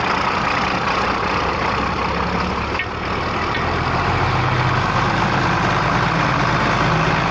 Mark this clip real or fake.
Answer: real